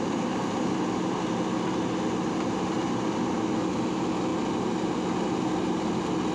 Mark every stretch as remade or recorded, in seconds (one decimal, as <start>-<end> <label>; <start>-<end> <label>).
0.0-6.3 recorded